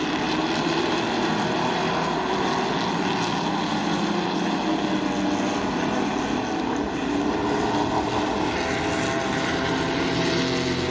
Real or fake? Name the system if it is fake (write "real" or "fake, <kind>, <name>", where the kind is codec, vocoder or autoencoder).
real